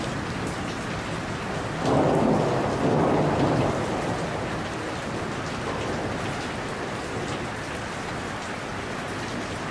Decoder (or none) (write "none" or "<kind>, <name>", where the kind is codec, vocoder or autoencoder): none